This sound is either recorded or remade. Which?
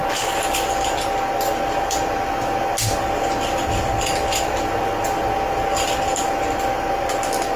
recorded